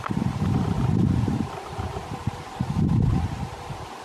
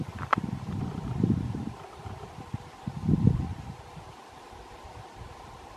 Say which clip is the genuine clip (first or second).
first